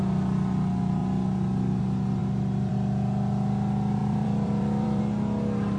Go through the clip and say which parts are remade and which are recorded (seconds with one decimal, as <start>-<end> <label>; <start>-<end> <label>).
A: 0.0-2.2 recorded; 2.2-2.7 remade; 2.7-4.0 recorded; 4.0-5.0 remade; 5.0-5.8 recorded